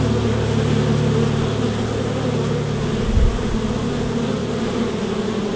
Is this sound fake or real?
real